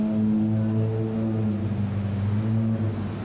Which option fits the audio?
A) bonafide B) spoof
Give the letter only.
A